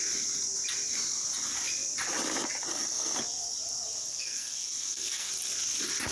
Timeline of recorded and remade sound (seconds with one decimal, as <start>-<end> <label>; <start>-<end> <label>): 0.0-2.7 recorded; 2.7-3.2 remade; 3.2-4.1 recorded; 4.1-5.3 remade; 5.3-6.1 recorded